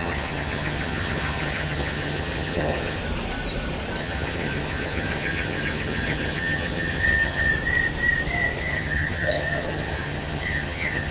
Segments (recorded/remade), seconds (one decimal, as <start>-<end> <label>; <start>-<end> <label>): 0.0-3.0 remade; 3.0-4.0 recorded; 4.0-7.5 remade; 7.5-8.6 recorded; 8.6-11.1 remade